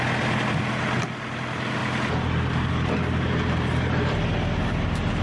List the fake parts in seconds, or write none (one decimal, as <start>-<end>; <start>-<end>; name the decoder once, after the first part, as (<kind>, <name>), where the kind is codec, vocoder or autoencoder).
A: none